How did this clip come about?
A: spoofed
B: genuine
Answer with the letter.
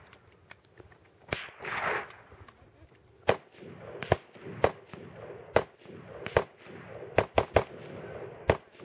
B